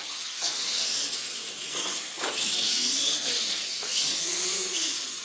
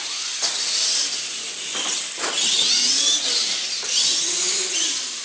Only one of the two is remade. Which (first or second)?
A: first